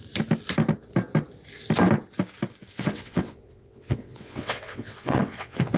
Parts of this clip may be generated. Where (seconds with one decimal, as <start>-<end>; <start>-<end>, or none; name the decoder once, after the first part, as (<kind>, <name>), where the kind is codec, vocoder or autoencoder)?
2.7-5.8 (vocoder, WaveNeXt)